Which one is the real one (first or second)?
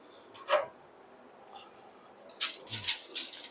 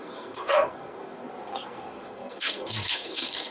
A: first